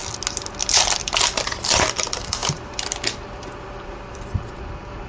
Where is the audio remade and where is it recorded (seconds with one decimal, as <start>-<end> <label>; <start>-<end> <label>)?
0.0-0.7 recorded; 0.7-2.4 remade; 2.4-4.1 recorded; 4.1-5.1 remade